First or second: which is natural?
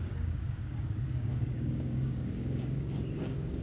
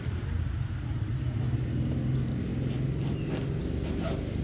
second